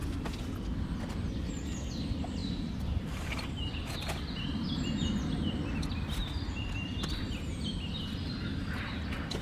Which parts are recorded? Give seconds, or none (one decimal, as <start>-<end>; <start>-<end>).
0.0-2.4; 3.2-6.2; 8.9-9.4

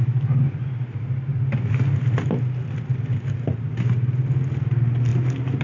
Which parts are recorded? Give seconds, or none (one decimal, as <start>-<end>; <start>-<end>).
0.0-5.6

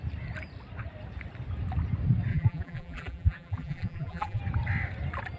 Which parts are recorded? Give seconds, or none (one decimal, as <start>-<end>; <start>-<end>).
0.0-2.3; 4.4-5.4

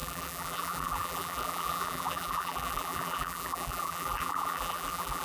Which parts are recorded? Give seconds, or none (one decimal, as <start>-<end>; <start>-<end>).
none

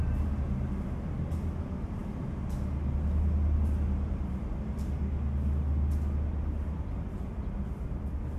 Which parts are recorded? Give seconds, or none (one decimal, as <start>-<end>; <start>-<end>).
0.0-8.4

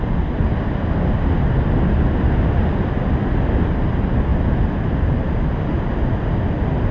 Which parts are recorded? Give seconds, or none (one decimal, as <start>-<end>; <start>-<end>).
0.0-6.9

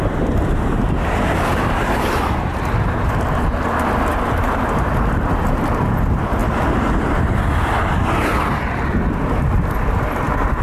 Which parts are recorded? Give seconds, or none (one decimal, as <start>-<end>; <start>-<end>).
6.4-9.6